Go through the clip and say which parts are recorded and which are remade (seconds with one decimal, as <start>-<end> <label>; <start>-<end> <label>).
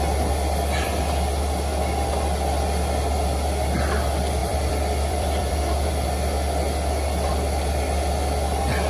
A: 0.0-4.4 recorded; 4.4-5.9 remade; 5.9-8.9 recorded